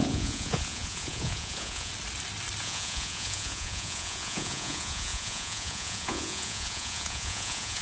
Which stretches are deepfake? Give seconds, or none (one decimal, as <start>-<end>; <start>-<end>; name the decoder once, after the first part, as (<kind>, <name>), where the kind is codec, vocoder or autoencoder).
0.0-1.9 (vocoder, Vocos); 2.6-7.8